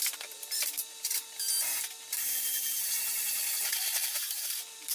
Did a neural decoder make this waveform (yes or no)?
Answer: no